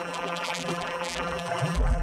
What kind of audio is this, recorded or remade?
remade